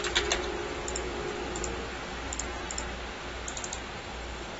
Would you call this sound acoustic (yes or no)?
yes